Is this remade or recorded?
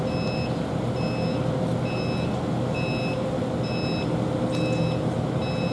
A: recorded